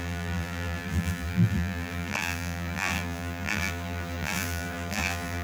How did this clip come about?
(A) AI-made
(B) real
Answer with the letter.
A